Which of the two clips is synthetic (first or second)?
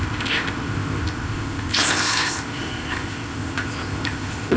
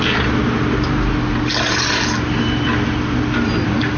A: first